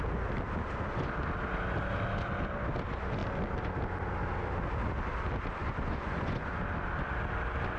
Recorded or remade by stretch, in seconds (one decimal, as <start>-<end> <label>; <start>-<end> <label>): 0.0-5.6 recorded; 5.6-6.5 remade; 6.5-7.8 recorded

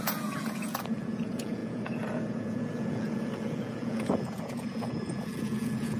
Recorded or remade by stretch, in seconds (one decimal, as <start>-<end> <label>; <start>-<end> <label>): 0.0-6.0 remade

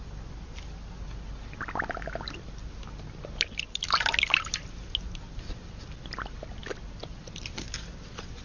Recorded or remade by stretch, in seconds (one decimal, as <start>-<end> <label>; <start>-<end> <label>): 0.0-8.4 recorded

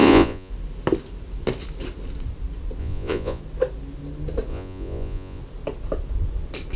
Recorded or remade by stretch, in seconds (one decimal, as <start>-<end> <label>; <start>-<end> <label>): 0.0-0.5 remade; 0.5-2.8 recorded; 2.8-3.4 remade; 3.4-4.5 recorded; 4.5-5.4 remade; 5.4-6.8 recorded

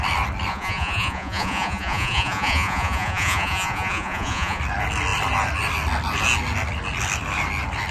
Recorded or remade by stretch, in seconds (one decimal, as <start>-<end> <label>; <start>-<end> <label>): 0.0-0.5 recorded; 0.5-4.6 remade; 4.6-7.9 recorded

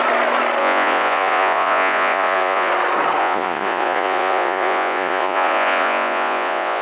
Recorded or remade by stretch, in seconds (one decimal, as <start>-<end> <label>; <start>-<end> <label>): 0.0-0.6 recorded; 0.6-2.7 remade; 2.7-3.2 recorded; 3.2-6.8 remade